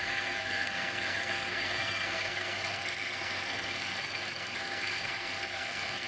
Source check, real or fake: fake